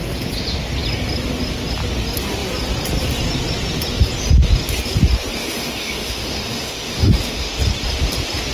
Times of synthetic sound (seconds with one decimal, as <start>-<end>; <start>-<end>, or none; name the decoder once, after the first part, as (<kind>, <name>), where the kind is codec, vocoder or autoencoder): 5.4-7.6 (autoencoder, DAC-VAE)